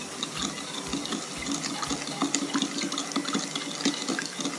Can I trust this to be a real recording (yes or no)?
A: yes